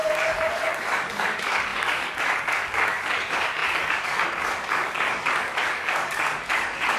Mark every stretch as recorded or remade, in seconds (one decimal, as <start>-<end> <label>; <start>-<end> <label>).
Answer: 0.0-7.0 remade